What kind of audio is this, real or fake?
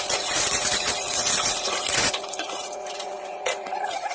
fake